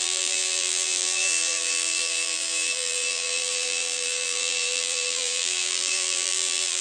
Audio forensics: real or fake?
fake